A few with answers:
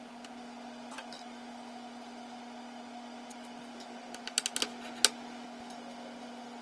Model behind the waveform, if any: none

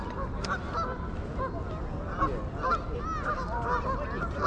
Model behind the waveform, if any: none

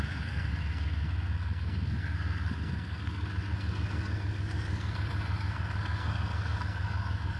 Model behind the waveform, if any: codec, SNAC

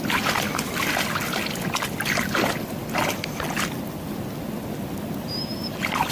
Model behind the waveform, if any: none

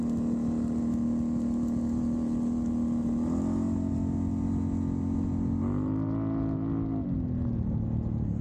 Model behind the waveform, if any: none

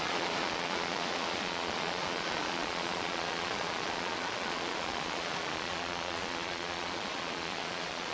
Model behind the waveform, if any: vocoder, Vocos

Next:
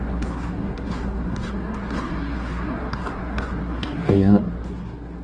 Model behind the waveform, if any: codec, SNAC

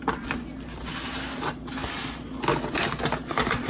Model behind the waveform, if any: none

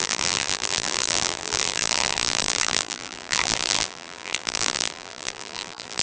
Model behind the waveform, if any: vocoder, BigVGAN v2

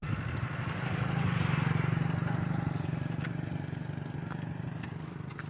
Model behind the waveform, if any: none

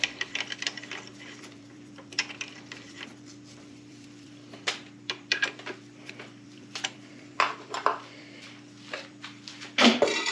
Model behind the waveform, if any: vocoder, BigVGAN v2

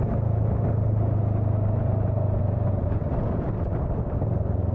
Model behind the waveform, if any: none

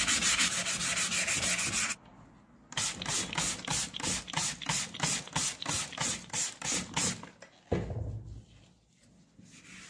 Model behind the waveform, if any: none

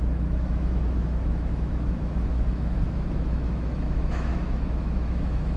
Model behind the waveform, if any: autoencoder, DAC-VAE